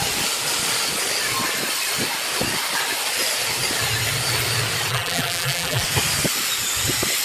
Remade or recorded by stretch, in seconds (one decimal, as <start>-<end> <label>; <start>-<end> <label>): 0.0-4.9 recorded; 4.9-5.8 remade; 5.8-7.2 recorded